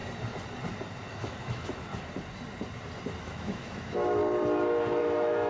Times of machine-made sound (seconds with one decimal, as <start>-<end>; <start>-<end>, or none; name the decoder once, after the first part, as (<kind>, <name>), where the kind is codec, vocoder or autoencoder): 1.1-1.9 (autoencoder, DAC-VAE); 3.2-4.2; 5.0-5.5